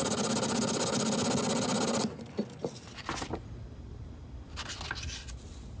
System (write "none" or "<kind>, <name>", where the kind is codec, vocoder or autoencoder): none